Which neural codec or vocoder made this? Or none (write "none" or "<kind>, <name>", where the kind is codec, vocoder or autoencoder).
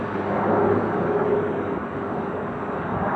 codec, DAC